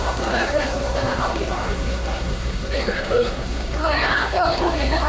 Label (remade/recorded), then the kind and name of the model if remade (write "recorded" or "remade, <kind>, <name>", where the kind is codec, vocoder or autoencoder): remade, codec, SNAC